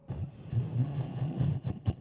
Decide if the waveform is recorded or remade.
recorded